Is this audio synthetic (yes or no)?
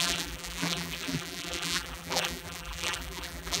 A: yes